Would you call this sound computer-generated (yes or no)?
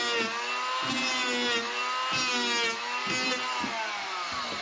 no